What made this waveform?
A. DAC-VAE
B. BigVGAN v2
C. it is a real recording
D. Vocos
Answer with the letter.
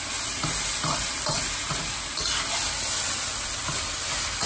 C